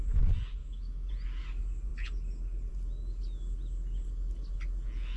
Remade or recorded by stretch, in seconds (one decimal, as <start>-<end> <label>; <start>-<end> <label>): 0.0-0.6 recorded; 0.6-1.1 remade; 1.1-5.2 recorded